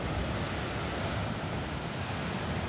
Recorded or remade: recorded